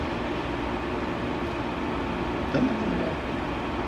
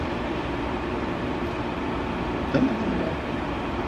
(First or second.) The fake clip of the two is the second